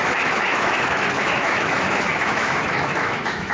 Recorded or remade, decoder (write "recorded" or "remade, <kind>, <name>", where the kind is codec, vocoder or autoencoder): remade, autoencoder, DAC-VAE